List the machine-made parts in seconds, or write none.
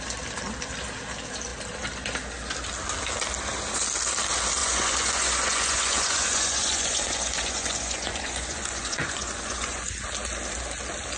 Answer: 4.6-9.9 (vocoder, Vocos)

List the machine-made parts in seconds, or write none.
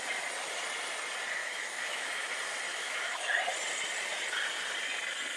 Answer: 1.4-2.3 (autoencoder, DAC-VAE); 2.7-3.4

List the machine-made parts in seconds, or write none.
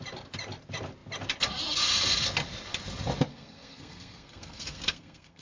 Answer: 3.3-5.4 (codec, SNAC)